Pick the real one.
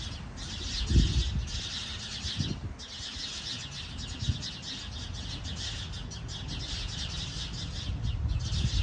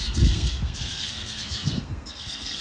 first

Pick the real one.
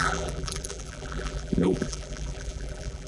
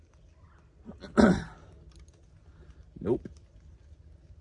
second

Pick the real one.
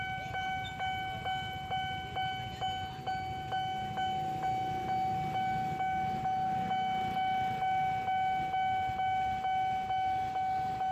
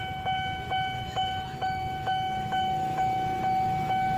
first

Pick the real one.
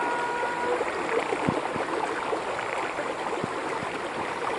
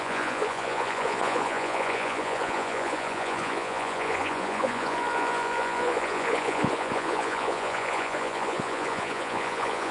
first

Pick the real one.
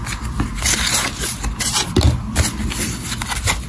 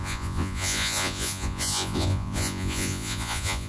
first